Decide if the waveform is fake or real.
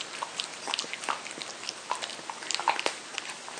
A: real